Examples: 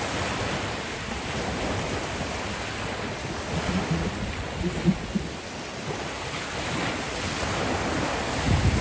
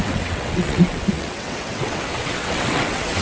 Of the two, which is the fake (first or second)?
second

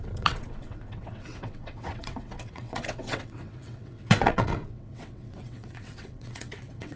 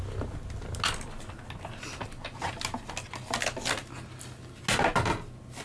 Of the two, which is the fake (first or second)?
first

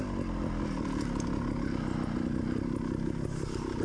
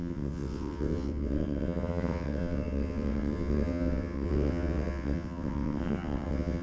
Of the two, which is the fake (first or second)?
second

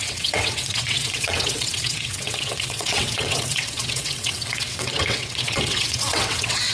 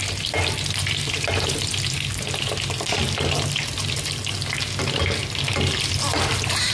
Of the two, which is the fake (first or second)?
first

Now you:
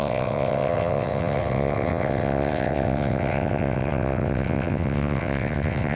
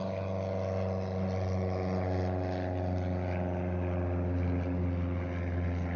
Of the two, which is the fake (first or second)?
first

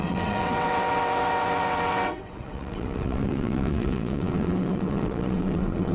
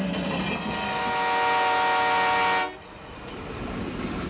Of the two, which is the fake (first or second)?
first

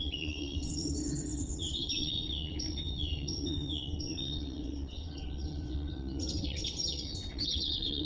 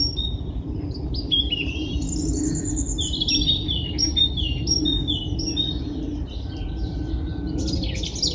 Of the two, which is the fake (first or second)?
first